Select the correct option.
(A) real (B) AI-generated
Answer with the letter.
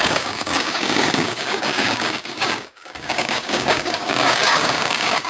B